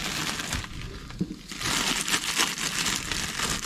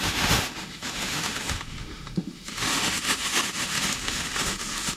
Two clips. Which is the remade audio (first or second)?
second